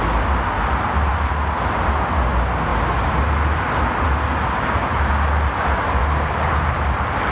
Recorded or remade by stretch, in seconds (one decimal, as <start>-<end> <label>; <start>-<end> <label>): 0.0-7.3 recorded